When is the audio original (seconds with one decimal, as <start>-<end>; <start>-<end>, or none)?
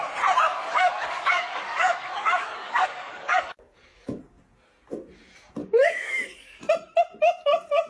0.0-0.5; 4.2-5.6; 6.6-7.9